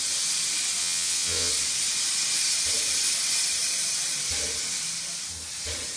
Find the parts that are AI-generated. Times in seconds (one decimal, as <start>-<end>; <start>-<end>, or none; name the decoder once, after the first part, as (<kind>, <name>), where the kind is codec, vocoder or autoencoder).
0.8-1.5 (vocoder, WaveNeXt)